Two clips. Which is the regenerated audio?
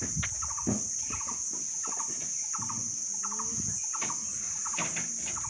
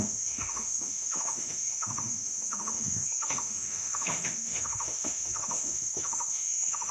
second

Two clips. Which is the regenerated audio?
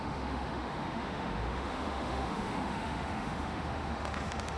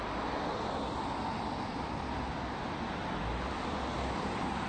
first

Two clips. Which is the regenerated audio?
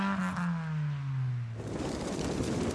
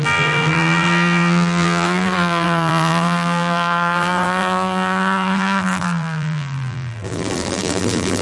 second